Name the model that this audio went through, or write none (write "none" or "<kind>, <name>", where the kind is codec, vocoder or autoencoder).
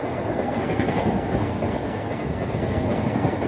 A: codec, SNAC